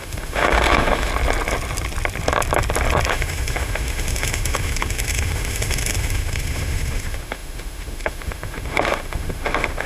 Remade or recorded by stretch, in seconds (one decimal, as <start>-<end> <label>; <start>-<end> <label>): 0.0-1.1 remade; 1.1-3.1 recorded; 3.1-9.9 remade